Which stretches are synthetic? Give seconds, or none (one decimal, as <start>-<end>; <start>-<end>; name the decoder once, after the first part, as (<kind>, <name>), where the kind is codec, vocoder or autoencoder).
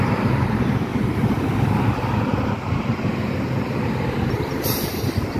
0.0-0.9 (vocoder, BigVGAN v2); 4.1-5.4